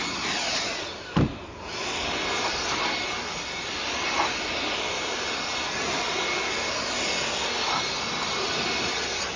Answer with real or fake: real